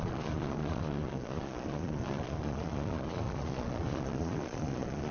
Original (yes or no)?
no